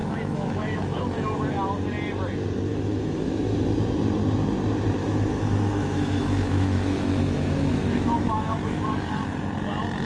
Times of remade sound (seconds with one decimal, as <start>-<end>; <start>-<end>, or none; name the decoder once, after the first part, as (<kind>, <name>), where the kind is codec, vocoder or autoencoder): 0.0-1.0 (autoencoder, DAC-VAE); 2.7-3.6; 5.0-9.1